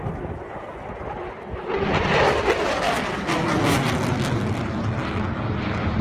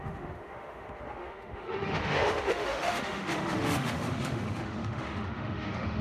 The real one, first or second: first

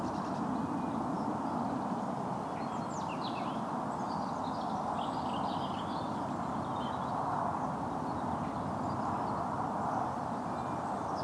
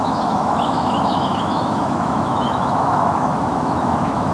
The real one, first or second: first